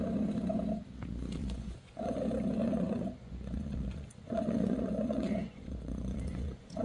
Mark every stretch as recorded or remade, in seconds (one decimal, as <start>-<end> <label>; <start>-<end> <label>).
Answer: 0.0-1.4 recorded; 1.4-2.2 remade; 2.2-2.6 recorded; 2.6-6.8 remade